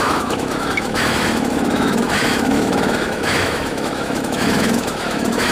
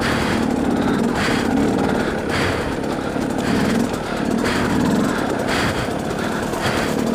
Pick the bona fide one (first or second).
second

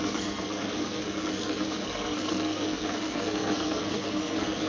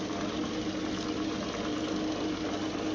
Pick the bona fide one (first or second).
second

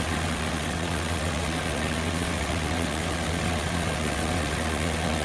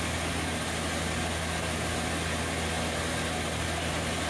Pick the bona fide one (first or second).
second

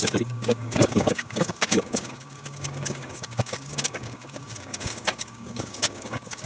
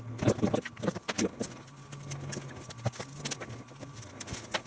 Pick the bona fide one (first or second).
second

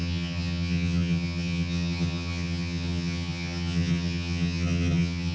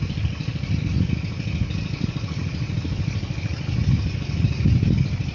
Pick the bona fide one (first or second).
second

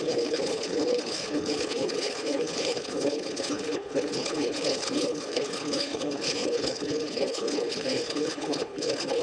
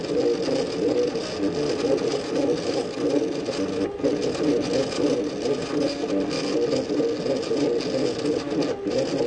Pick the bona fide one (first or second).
second